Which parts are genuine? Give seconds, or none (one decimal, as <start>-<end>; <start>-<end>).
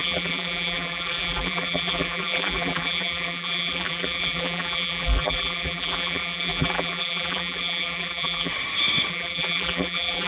8.5-9.1